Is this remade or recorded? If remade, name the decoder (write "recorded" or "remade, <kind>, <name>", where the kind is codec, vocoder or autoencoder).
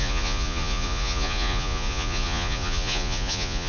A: remade, vocoder, Vocos